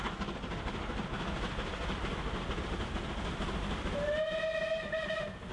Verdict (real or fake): real